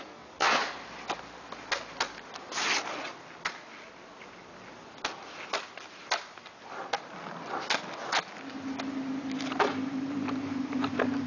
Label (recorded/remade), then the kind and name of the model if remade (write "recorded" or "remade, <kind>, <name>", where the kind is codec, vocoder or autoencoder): recorded